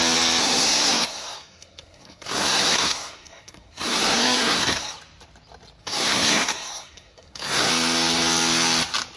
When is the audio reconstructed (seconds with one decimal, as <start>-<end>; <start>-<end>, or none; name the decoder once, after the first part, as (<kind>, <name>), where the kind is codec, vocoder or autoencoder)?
0.4-4.9 (codec, SNAC); 5.8-7.7